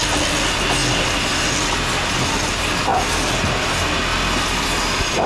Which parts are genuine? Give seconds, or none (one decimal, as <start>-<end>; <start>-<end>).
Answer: 0.0-5.3

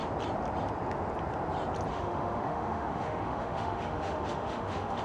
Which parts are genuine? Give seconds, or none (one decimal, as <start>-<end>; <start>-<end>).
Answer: 0.0-1.9

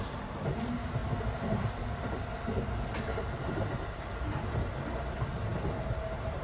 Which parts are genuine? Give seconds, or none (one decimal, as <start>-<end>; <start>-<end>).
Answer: 0.0-6.4

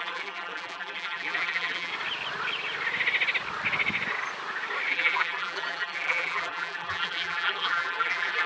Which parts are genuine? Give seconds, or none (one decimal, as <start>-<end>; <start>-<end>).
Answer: 1.9-4.9